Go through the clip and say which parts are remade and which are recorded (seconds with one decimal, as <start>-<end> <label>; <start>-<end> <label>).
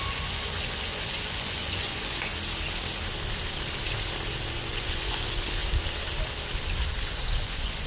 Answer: 0.0-2.3 remade; 2.3-4.5 recorded; 4.5-5.6 remade; 5.6-7.0 recorded; 7.0-7.9 remade